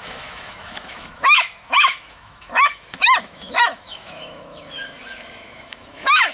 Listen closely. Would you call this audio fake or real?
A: fake